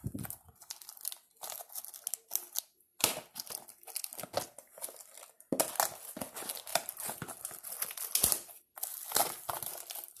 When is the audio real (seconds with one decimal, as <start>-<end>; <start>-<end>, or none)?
0.0-10.2